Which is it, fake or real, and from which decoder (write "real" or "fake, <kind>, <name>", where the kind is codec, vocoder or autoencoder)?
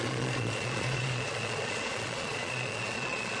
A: fake, vocoder, Vocos